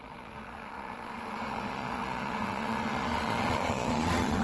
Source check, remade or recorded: remade